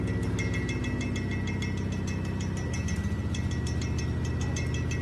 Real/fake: real